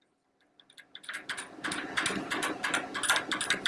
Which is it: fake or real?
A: real